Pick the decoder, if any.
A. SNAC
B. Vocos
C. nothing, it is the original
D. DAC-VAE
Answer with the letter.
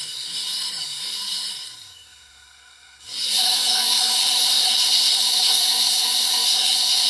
A